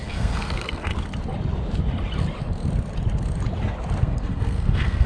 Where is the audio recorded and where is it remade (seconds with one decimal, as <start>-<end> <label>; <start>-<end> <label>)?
0.0-0.9 remade; 0.9-4.0 recorded; 4.0-5.1 remade